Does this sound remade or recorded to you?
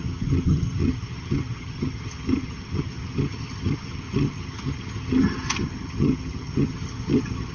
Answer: remade